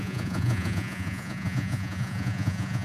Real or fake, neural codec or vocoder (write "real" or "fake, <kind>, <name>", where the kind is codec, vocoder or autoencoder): fake, vocoder, Vocos